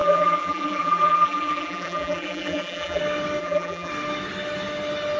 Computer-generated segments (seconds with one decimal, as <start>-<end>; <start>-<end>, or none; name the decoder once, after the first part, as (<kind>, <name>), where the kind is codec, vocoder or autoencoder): 0.0-3.0 (vocoder, BigVGAN v2); 3.4-3.9